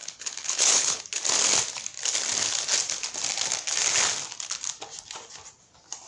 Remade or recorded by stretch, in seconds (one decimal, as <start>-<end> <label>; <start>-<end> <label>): 0.0-1.0 remade; 1.0-6.1 recorded